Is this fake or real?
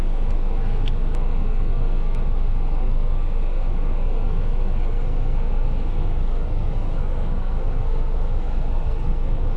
fake